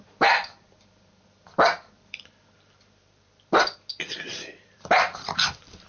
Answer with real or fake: fake